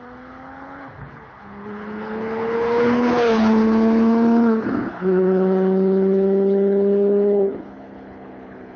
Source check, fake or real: fake